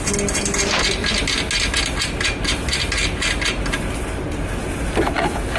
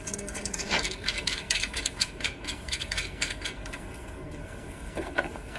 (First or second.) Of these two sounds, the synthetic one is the second